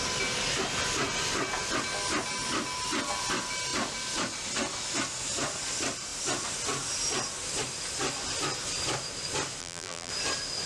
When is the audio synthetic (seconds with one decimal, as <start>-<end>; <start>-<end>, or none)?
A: 9.6-10.1